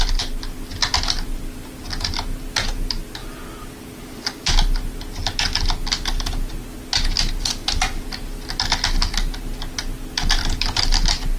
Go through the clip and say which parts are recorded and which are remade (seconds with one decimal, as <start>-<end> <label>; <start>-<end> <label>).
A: 0.0-11.4 recorded